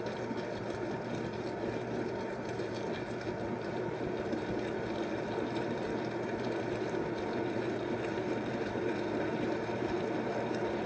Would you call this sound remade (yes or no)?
no